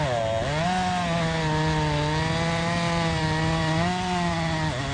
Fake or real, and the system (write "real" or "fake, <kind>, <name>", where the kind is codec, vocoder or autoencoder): real